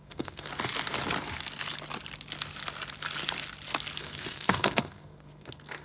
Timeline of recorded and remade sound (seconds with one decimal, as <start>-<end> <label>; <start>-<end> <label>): 0.0-0.5 remade; 0.5-4.0 recorded; 4.0-5.8 remade

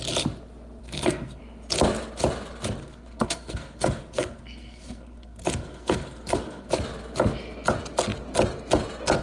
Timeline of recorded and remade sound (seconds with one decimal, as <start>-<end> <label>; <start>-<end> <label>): 0.0-0.8 recorded; 0.8-1.4 remade; 1.4-2.8 recorded; 2.8-6.7 remade; 6.7-9.2 recorded

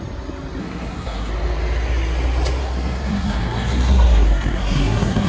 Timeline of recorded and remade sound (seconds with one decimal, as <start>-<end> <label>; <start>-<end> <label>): 0.0-0.6 recorded; 0.6-1.3 remade; 1.3-2.6 recorded; 2.6-5.3 remade

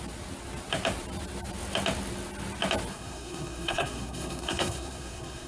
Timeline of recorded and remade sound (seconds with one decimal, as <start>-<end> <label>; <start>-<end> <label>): 0.0-2.9 recorded; 2.9-5.5 remade

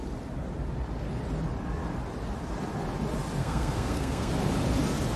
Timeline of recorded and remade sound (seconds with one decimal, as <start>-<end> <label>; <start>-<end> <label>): 0.0-3.4 recorded; 3.4-4.3 remade; 4.3-5.2 recorded

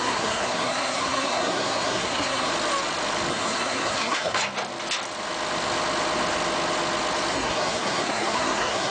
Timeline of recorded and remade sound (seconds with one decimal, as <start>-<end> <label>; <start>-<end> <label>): 0.0-2.5 remade; 2.5-3.3 recorded; 3.3-4.4 remade; 4.4-7.3 recorded; 7.3-8.9 remade